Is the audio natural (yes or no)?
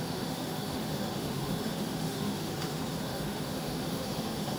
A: no